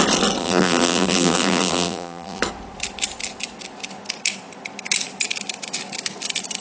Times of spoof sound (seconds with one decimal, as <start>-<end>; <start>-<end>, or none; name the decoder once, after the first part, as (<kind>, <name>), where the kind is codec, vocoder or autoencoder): 0.4-2.4 (vocoder, BigVGAN v2)